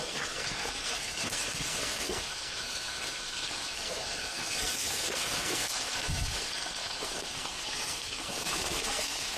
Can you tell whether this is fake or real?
fake